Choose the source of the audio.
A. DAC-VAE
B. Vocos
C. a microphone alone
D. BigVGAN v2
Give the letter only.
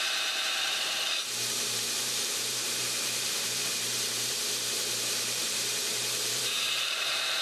D